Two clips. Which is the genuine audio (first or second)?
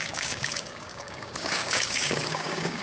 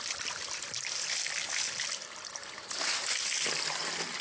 second